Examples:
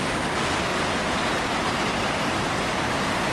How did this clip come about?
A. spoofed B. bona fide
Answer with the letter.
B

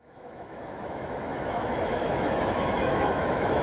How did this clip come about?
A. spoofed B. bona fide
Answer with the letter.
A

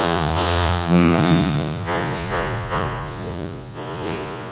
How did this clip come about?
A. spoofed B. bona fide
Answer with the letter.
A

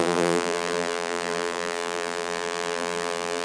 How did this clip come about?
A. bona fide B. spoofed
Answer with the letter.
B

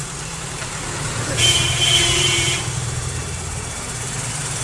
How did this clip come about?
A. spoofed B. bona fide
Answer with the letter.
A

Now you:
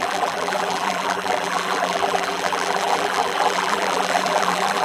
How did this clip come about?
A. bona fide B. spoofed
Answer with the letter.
B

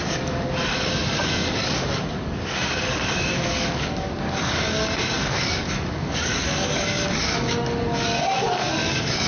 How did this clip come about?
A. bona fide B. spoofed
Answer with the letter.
B